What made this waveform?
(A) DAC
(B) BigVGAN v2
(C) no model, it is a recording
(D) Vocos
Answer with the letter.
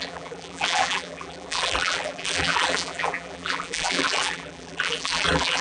B